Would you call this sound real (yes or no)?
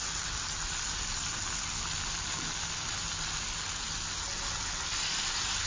yes